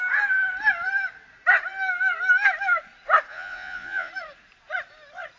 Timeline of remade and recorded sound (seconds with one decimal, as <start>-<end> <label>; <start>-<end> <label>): 0.0-3.3 recorded; 3.3-4.1 remade; 4.1-5.4 recorded